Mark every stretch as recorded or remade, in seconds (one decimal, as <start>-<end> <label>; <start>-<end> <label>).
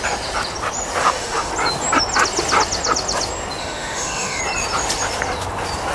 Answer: 0.0-1.0 recorded; 1.0-1.5 remade; 1.5-3.6 recorded; 3.6-4.4 remade; 4.4-5.9 recorded